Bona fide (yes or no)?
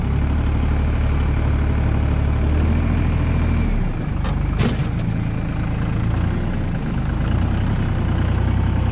yes